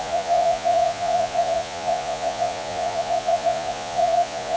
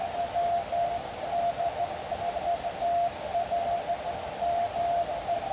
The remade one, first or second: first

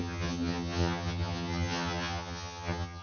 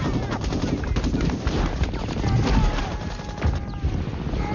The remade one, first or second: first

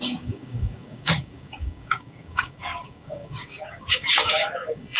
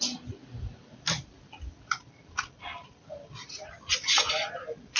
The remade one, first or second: first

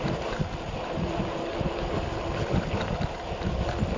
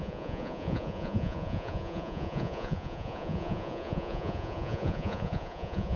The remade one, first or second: second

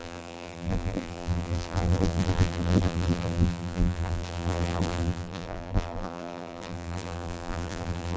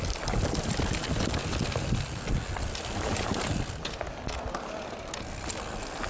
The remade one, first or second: first